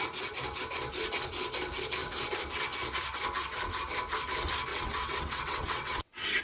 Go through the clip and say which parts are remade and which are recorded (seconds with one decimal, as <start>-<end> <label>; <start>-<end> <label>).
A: 0.0-4.7 recorded; 4.7-6.4 remade